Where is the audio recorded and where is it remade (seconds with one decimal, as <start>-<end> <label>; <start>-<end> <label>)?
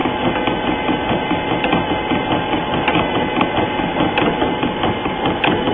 0.0-5.7 recorded